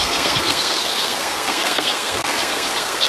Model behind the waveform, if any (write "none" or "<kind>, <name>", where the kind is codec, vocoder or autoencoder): codec, SNAC